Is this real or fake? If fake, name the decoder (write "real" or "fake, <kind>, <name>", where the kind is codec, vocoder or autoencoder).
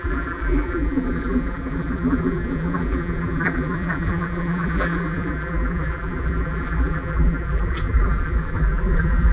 fake, vocoder, BigVGAN v2